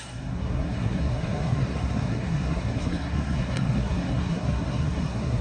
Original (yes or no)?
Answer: no